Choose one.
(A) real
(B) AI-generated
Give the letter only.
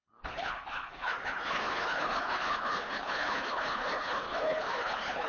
B